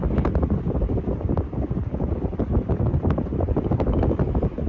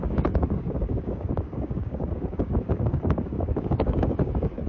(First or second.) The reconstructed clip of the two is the second